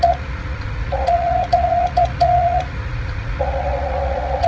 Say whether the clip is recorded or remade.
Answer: remade